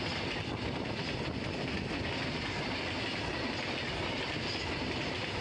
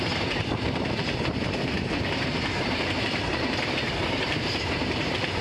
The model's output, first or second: second